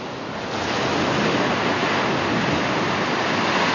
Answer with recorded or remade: recorded